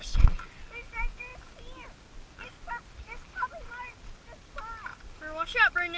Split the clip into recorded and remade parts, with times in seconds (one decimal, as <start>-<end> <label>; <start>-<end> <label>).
0.0-1.3 recorded; 1.3-3.7 remade; 3.7-6.0 recorded